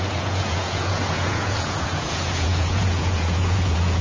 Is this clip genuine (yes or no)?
no